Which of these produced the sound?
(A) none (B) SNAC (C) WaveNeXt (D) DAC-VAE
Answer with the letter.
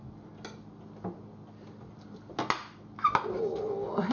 A